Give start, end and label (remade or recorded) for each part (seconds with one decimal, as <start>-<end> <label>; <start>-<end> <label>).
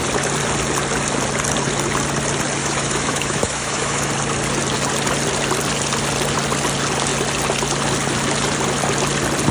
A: 0.0-2.6 recorded; 2.6-4.1 remade; 4.1-9.5 recorded